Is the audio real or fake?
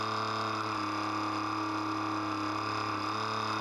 real